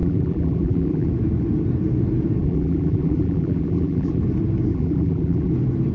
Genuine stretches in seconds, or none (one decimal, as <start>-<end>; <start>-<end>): 1.1-2.4; 4.2-4.7; 5.5-5.9